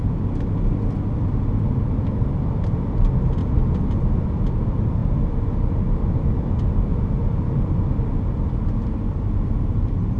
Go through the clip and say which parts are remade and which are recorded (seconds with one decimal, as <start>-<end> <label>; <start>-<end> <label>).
0.0-3.4 recorded; 3.4-4.2 remade; 4.2-6.9 recorded; 6.9-8.2 remade; 8.2-10.2 recorded

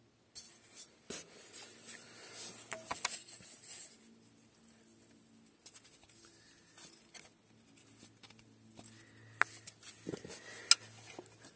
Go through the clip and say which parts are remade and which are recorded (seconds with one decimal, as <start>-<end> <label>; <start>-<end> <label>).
0.0-3.2 recorded; 3.2-3.9 remade; 3.9-11.6 recorded

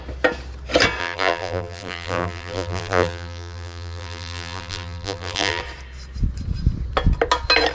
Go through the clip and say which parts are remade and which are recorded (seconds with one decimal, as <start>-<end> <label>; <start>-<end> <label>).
0.0-1.0 recorded; 1.0-5.6 remade; 5.6-7.7 recorded